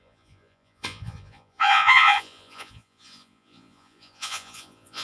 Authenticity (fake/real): fake